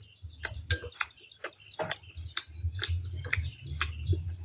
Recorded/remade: recorded